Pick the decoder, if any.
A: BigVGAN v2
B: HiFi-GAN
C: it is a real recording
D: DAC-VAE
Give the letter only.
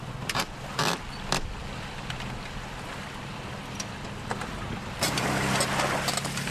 C